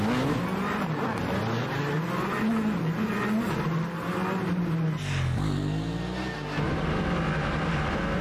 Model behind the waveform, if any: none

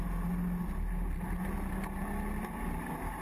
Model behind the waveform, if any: none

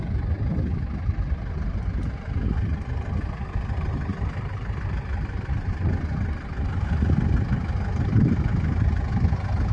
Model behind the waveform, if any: none